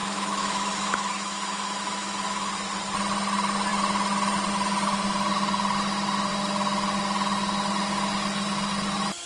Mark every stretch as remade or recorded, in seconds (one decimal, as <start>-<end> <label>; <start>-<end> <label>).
0.0-2.5 remade; 2.5-9.3 recorded